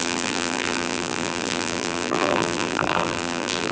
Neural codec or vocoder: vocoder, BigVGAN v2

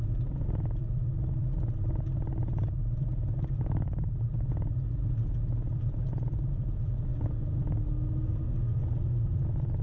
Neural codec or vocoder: none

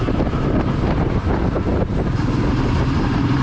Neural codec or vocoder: vocoder, BigVGAN v2